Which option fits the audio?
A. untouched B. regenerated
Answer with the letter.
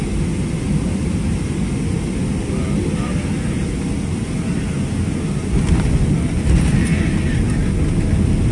A